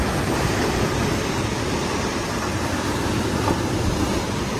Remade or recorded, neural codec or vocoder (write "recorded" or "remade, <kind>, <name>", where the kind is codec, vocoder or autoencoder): recorded